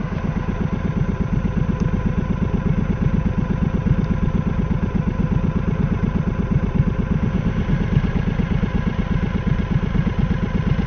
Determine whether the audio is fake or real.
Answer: real